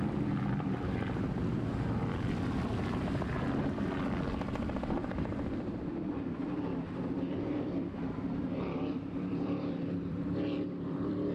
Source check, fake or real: fake